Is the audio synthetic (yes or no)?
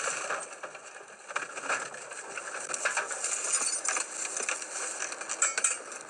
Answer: no